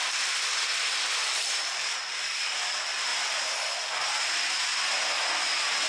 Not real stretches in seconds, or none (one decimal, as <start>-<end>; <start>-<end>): 0.0-4.7